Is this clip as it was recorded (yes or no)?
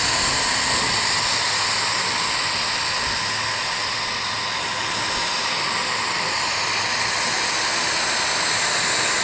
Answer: yes